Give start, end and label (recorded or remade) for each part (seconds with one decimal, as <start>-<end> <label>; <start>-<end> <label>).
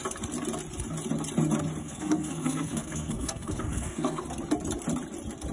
0.0-1.8 recorded; 1.8-4.2 remade; 4.2-5.5 recorded